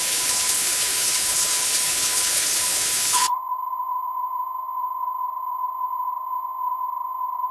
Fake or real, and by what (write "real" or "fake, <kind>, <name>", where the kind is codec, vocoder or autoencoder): fake, codec, HILCodec